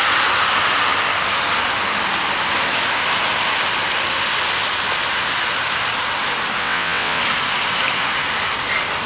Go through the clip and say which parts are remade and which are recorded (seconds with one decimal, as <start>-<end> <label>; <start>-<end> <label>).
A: 0.0-6.6 recorded; 6.6-7.2 remade; 7.2-9.1 recorded